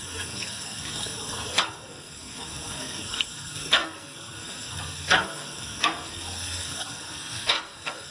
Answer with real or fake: fake